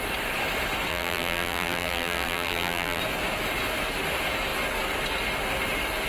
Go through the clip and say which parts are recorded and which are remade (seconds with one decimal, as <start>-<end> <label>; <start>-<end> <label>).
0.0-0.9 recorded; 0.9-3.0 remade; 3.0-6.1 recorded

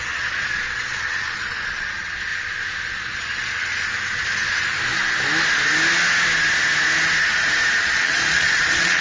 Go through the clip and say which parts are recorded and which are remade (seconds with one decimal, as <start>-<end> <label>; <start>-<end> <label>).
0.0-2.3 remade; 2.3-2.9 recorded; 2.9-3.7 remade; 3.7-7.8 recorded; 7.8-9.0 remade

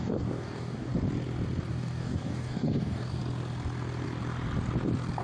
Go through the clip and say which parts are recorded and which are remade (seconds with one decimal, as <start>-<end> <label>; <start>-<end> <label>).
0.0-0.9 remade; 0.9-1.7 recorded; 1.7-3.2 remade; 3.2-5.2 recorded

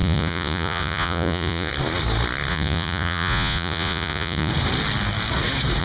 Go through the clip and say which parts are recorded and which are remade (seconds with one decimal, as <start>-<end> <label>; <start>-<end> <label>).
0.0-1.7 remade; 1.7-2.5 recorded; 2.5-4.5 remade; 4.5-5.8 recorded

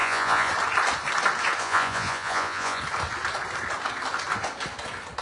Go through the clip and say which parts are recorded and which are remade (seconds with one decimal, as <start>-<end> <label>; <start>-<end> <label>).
0.0-0.5 remade; 0.5-1.6 recorded; 1.6-2.8 remade; 2.8-5.2 recorded